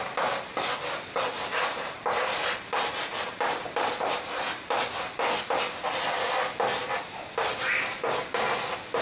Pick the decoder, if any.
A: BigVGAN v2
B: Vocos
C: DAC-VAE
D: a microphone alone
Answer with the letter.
D